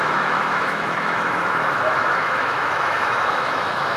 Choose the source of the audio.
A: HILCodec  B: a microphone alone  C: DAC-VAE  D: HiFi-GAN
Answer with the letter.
C